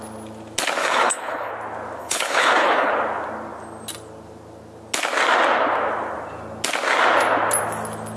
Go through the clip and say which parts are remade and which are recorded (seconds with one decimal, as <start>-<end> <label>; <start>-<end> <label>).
0.0-0.8 recorded; 0.8-1.5 remade; 1.5-2.0 recorded; 2.0-2.9 remade; 2.9-8.2 recorded